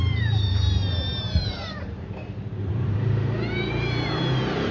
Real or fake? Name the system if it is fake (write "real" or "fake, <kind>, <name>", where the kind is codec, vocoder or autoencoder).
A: fake, vocoder, BigVGAN v2